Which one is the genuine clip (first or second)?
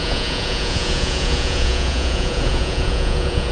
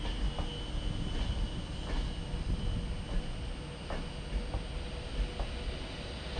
second